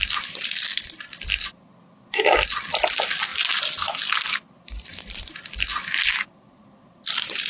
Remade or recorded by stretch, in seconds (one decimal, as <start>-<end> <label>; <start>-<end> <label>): 0.0-7.5 recorded